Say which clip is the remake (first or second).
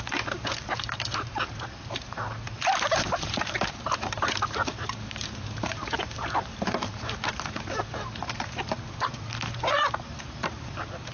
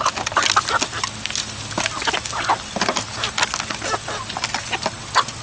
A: first